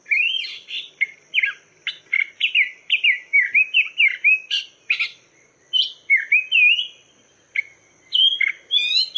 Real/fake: real